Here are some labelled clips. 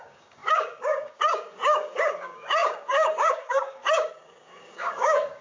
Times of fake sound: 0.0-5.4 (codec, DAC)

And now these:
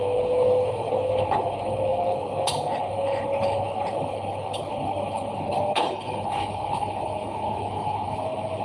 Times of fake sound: 0.0-8.6 (codec, HILCodec)

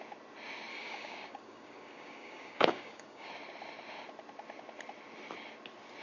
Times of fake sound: 0.7-3.3 (codec, DAC)

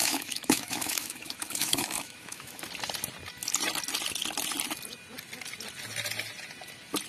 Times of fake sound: 0.0-2.6 (autoencoder, DAC-VAE)